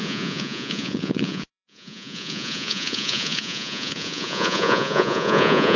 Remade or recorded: remade